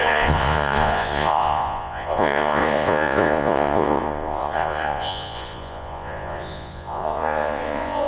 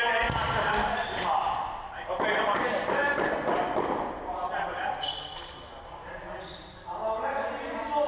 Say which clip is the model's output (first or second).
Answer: first